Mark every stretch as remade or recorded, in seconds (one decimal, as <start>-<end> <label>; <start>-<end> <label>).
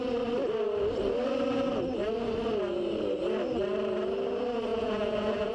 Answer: 0.0-4.7 recorded; 4.7-5.5 remade